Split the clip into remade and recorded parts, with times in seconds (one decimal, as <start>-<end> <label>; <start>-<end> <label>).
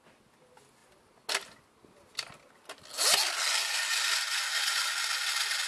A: 0.0-5.7 recorded